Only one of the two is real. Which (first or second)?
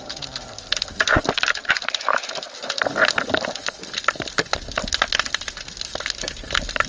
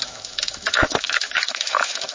first